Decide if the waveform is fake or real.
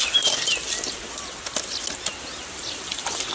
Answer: real